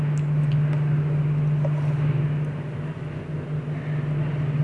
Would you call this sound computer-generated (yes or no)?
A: no